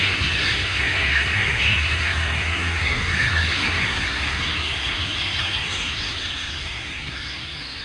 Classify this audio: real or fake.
fake